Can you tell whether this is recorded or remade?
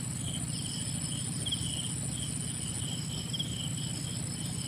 recorded